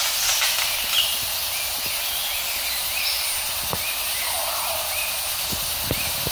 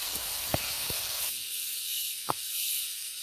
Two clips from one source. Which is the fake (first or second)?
second